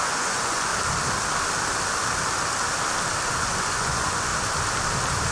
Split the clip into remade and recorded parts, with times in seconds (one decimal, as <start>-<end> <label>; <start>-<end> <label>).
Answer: 0.0-0.7 remade; 0.7-3.3 recorded; 3.3-4.3 remade; 4.3-5.3 recorded

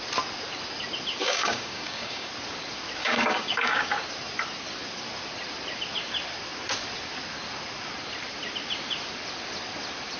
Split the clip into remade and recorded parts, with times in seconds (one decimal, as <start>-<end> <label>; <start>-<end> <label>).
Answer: 0.0-1.2 recorded; 1.2-2.3 remade; 2.3-3.0 recorded; 3.0-3.9 remade; 3.9-10.2 recorded

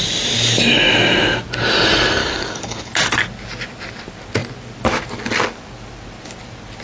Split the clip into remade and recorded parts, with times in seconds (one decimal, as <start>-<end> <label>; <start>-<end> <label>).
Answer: 0.0-2.2 recorded; 2.2-2.9 remade; 2.9-6.8 recorded

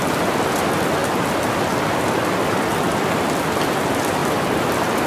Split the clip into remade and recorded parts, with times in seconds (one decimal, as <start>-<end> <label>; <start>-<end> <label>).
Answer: 0.0-5.1 recorded

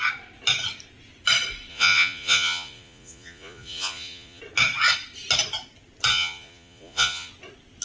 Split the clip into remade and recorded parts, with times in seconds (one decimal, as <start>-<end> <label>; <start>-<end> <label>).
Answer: 0.0-1.7 recorded; 1.7-4.4 remade; 4.4-6.1 recorded; 6.1-7.3 remade; 7.3-7.8 recorded

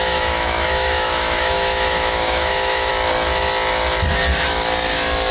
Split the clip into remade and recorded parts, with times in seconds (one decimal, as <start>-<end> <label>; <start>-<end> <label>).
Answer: 0.0-2.9 remade; 2.9-5.3 recorded